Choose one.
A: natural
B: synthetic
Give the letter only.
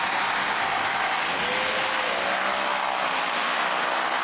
A